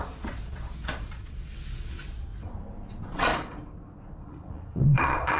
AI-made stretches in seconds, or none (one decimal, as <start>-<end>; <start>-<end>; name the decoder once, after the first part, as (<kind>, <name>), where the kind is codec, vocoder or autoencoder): 0.0-2.3 (vocoder, Vocos); 2.9-3.3; 4.2-5.4